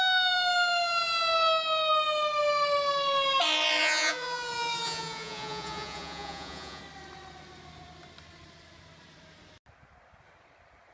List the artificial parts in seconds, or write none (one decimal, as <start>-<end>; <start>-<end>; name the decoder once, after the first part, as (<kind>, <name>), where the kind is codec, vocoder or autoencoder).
3.8-6.8 (vocoder, Vocos)